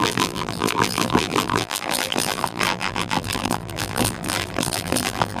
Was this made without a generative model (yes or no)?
no